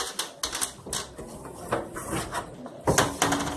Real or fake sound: real